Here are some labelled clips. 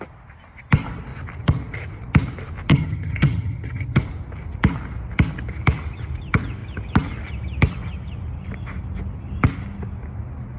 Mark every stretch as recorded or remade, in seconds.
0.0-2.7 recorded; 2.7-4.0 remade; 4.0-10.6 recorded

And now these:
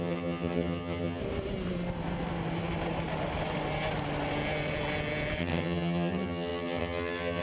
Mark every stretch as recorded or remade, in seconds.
0.0-1.2 remade; 1.2-5.4 recorded; 5.4-7.4 remade

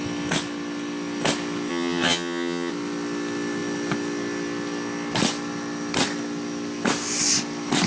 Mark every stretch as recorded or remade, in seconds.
0.0-1.7 recorded; 1.7-2.7 remade; 2.7-7.9 recorded

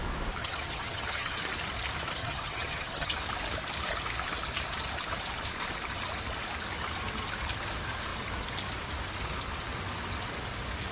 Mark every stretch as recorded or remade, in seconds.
0.0-0.4 recorded; 0.4-1.4 remade; 1.4-2.2 recorded; 2.2-3.2 remade; 3.2-10.9 recorded

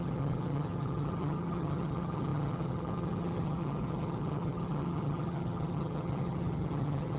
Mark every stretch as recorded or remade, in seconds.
0.0-7.2 remade

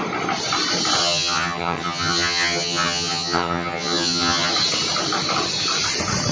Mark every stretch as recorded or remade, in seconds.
0.0-1.0 recorded; 1.0-4.5 remade; 4.5-6.3 recorded

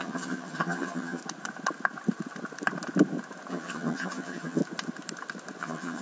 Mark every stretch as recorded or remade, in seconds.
0.0-1.2 remade; 1.2-3.5 recorded; 3.5-4.6 remade; 4.6-5.6 recorded; 5.6-6.0 remade

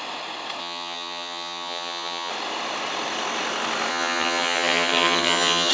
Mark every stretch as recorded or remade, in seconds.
0.0-0.6 recorded; 0.6-2.3 remade; 2.3-3.9 recorded; 3.9-5.7 remade